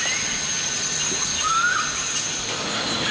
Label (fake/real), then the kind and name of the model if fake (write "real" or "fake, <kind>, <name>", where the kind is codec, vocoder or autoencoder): real